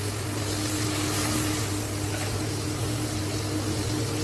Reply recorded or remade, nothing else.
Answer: recorded